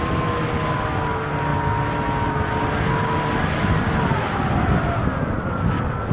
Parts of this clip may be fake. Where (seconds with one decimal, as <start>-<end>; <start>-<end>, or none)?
none